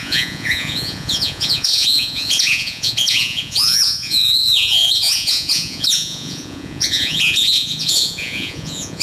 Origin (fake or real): fake